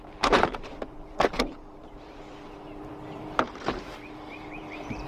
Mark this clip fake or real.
fake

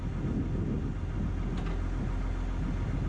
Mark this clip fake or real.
real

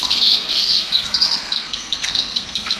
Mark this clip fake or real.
fake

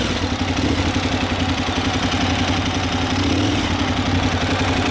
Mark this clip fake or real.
real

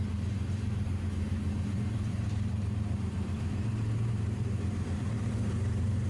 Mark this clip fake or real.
fake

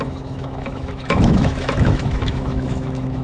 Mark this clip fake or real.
fake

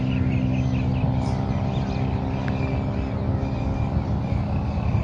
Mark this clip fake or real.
real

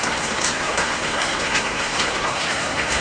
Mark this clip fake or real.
fake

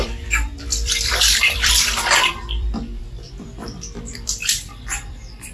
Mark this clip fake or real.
fake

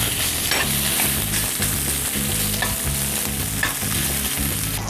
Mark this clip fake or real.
real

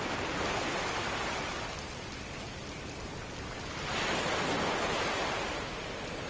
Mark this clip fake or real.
real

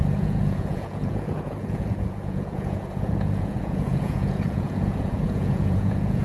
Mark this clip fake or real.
fake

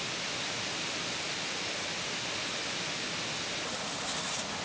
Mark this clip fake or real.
real